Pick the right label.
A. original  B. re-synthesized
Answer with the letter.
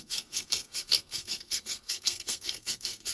B